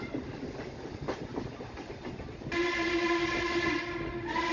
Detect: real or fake real